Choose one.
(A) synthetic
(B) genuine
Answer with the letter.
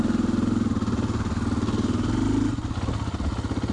B